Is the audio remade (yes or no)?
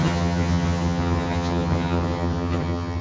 yes